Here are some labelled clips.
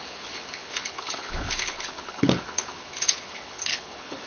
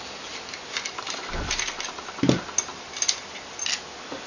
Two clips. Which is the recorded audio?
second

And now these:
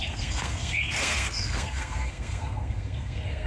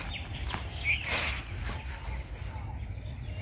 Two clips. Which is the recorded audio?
second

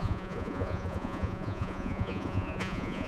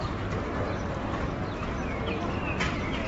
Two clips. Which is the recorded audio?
second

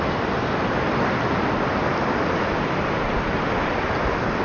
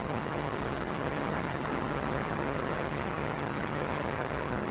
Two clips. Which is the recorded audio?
first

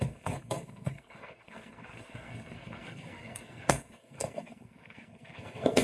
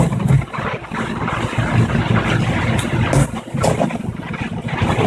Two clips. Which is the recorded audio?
second